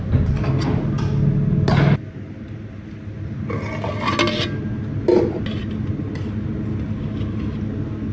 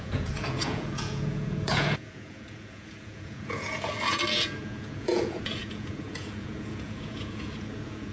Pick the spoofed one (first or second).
second